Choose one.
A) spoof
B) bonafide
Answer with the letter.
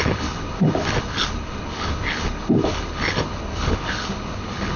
A